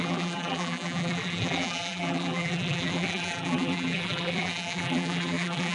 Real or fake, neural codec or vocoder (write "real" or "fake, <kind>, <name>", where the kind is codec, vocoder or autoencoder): fake, vocoder, BigVGAN v2